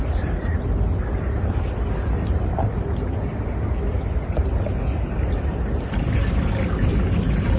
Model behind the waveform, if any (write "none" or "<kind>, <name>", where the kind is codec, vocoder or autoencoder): none